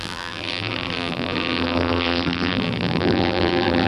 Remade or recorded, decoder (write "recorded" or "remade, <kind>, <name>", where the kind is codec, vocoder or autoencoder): remade, vocoder, BigVGAN v2